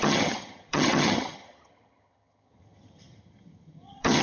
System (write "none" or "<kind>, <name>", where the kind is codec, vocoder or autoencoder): vocoder, HiFi-GAN